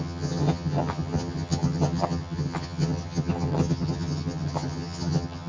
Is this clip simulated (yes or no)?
yes